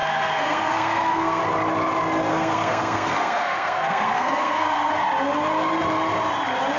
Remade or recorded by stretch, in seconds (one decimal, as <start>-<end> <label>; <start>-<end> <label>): 0.0-1.4 remade; 1.4-2.3 recorded; 2.3-4.9 remade; 4.9-6.8 recorded